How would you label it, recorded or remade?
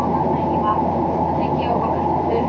recorded